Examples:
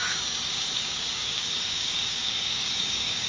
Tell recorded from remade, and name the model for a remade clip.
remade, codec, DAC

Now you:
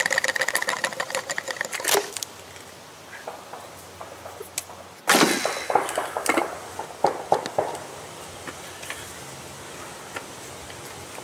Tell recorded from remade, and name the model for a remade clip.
recorded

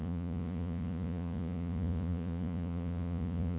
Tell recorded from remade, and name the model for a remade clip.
remade, vocoder, Vocos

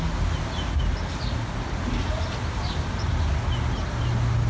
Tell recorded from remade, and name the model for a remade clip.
recorded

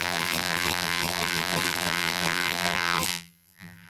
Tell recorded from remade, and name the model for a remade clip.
remade, vocoder, BigVGAN v2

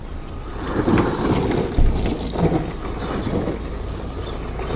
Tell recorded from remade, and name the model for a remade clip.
recorded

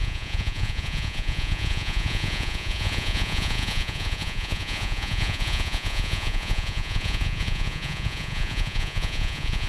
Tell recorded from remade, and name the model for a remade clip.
remade, vocoder, Vocos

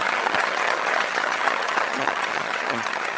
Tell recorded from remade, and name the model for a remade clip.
remade, vocoder, HiFi-GAN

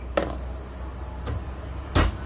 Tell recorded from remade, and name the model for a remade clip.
recorded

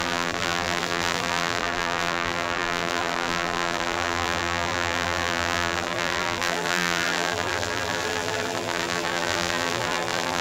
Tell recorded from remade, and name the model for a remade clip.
remade, vocoder, BigVGAN v2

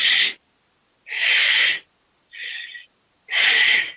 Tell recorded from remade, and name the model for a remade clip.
recorded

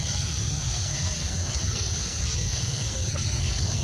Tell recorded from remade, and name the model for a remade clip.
remade, codec, SNAC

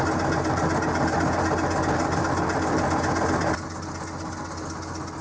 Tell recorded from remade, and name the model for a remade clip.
recorded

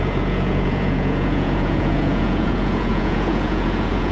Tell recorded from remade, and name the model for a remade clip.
remade, vocoder, Vocos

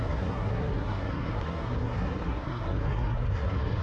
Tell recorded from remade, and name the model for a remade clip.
remade, codec, SNAC